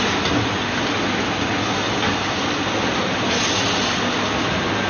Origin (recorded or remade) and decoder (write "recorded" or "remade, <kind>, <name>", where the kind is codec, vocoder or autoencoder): recorded